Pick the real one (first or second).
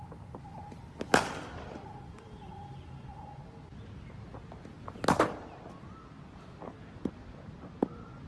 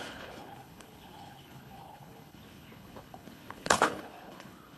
first